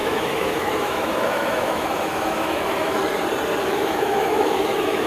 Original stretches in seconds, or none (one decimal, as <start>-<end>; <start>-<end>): 3.0-3.6